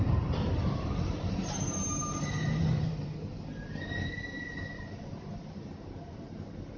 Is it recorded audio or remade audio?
remade